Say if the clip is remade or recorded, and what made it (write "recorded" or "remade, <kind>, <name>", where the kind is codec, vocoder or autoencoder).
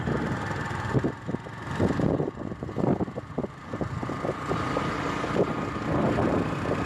recorded